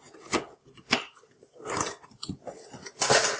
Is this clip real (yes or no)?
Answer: yes